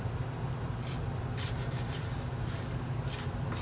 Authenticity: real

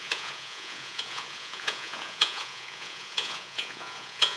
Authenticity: fake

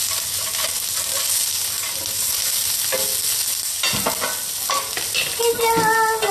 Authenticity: real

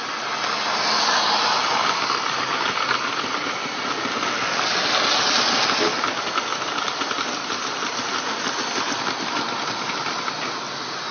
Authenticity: real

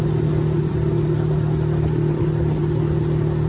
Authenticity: real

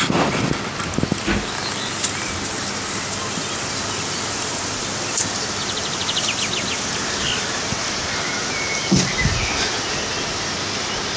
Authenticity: real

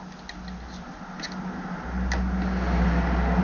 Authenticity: real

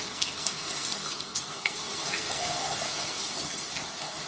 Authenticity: fake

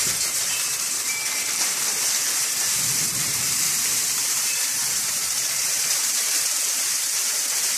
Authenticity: fake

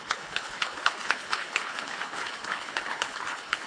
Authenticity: fake